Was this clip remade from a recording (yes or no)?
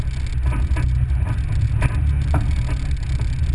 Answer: no